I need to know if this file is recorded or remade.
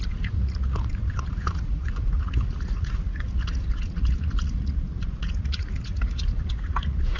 remade